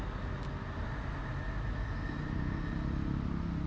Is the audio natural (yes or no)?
yes